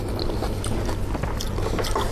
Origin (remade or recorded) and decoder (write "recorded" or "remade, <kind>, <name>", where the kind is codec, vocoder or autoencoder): recorded